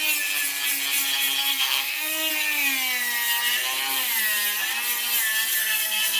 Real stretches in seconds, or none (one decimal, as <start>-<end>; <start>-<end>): 0.0-1.5; 2.3-5.6